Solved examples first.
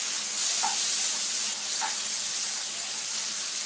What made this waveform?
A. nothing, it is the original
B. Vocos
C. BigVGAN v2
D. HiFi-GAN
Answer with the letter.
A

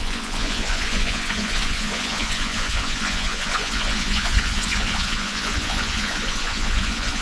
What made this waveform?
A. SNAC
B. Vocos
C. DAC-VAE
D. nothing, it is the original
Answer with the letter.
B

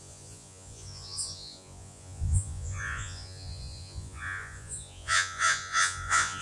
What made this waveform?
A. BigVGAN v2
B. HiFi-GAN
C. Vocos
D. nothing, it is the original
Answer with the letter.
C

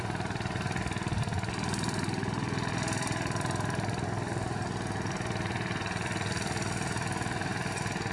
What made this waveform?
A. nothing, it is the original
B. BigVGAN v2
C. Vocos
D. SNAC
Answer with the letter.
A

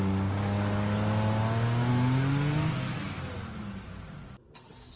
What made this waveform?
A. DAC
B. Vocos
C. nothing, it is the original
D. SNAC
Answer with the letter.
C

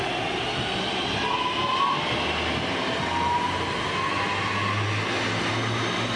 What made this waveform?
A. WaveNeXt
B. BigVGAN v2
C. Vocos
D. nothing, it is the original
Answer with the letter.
D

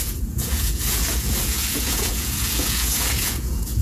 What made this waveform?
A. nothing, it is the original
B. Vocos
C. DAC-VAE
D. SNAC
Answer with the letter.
B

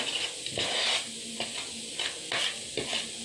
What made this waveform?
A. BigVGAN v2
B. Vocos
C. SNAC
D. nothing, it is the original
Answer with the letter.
D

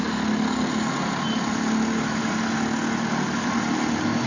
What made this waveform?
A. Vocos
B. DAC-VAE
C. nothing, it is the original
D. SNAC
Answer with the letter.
C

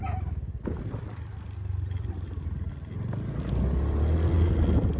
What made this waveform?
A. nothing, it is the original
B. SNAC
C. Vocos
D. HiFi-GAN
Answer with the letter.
A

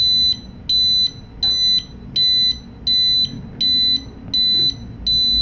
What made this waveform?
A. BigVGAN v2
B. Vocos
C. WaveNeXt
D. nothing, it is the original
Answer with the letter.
D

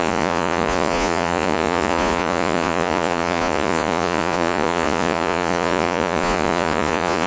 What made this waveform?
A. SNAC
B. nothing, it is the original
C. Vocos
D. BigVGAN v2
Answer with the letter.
C